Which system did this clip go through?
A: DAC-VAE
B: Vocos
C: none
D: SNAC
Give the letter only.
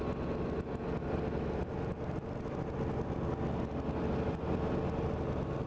C